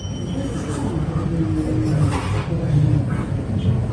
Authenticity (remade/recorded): recorded